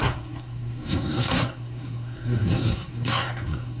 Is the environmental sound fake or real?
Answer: fake